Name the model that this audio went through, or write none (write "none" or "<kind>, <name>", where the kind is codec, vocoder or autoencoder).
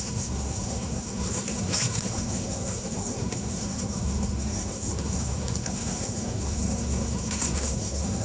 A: codec, SNAC